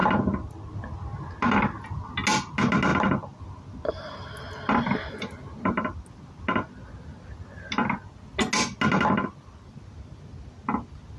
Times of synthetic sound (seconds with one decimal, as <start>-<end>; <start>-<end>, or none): none